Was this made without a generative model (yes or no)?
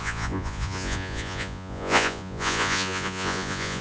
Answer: no